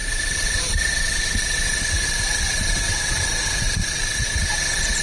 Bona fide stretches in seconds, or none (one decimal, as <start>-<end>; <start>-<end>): 3.0-3.8; 4.5-5.0